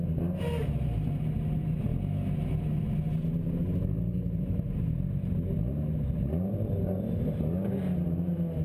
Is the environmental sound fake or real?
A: real